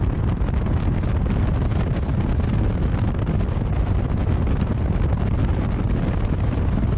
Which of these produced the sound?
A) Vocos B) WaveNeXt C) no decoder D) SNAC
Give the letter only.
C